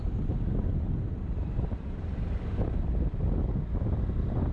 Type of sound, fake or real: fake